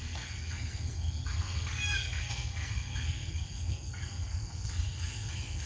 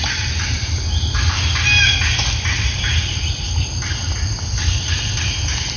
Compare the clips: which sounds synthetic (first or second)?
first